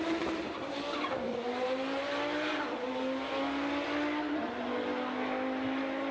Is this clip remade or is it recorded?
recorded